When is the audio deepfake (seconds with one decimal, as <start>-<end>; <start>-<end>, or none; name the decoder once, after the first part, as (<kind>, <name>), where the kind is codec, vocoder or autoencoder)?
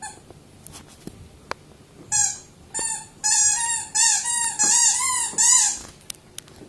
none